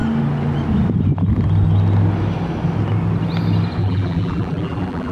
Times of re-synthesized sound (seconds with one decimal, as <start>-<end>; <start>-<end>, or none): 3.8-5.1